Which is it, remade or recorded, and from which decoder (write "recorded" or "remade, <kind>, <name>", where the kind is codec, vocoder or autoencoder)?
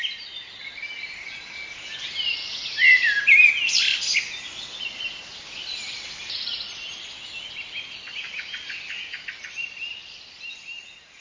recorded